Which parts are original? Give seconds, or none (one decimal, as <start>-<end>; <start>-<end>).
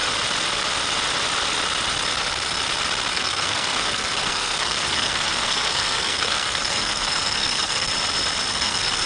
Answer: 0.0-3.1; 7.9-8.5